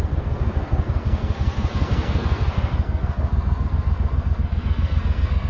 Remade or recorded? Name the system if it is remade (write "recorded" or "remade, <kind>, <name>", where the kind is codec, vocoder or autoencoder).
remade, codec, SNAC